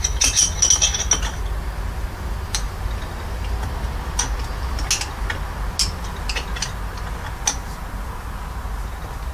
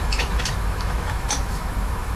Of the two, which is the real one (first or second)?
first